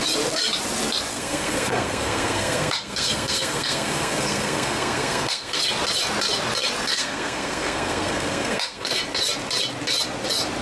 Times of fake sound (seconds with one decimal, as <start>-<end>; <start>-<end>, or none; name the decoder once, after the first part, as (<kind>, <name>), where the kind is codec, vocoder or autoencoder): 1.1-5.6 (codec, SNAC); 6.9-9.0